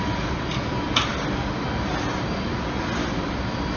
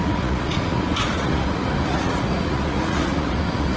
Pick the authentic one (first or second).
first